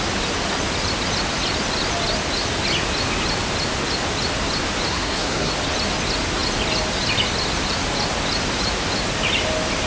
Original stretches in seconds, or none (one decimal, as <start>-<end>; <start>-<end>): 0.0-4.9; 5.5-9.9